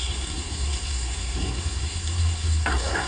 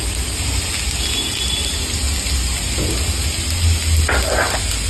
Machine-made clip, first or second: first